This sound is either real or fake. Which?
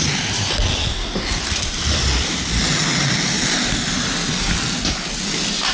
real